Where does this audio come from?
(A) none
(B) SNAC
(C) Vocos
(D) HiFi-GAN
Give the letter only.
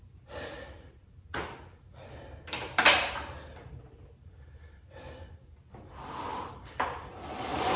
A